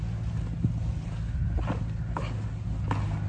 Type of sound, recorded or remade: recorded